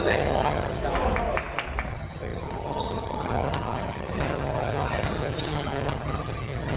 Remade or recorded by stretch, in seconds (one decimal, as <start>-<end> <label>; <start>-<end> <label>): 0.0-0.8 remade; 0.8-1.9 recorded; 1.9-6.8 remade